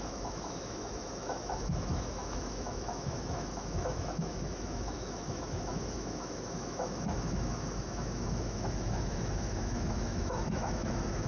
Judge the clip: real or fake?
fake